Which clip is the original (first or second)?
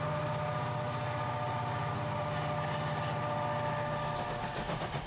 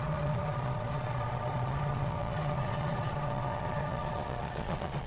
first